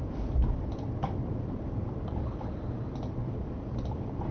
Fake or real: fake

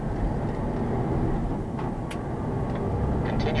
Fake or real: real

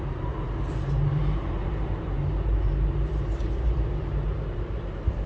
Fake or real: fake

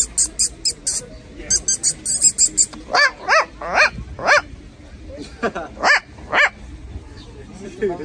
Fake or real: real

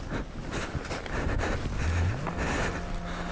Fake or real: real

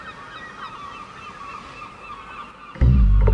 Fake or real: real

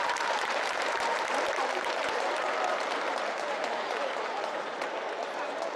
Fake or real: fake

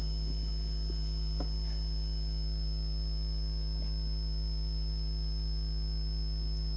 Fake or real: real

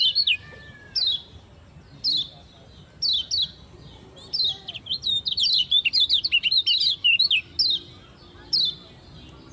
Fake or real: real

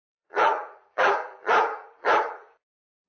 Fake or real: fake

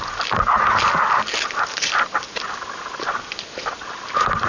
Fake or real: real